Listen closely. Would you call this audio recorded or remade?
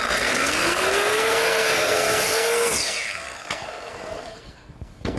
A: remade